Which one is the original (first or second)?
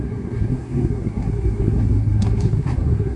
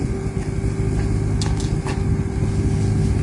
second